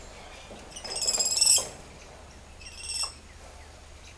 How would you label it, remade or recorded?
recorded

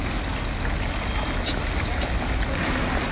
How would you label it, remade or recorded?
recorded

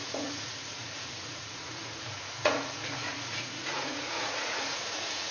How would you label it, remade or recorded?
remade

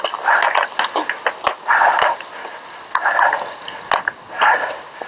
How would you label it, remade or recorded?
recorded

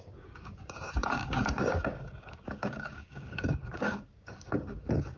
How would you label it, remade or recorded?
remade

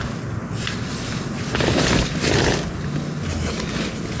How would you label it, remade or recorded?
recorded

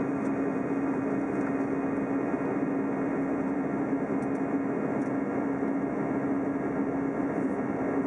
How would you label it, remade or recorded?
recorded